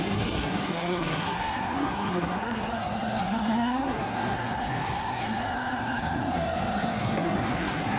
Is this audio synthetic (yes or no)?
yes